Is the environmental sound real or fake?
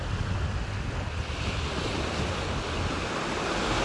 real